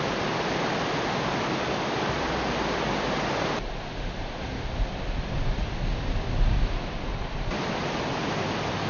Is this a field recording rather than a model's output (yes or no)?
yes